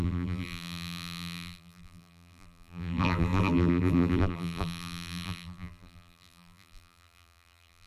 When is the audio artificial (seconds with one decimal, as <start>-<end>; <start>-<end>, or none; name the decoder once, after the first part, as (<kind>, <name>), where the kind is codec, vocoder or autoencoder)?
0.0-7.9 (vocoder, BigVGAN v2)